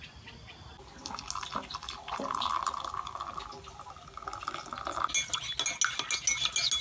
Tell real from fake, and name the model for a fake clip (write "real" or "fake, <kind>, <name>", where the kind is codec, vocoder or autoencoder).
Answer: real